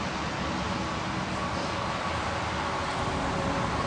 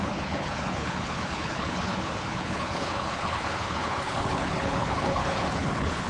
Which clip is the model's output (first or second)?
second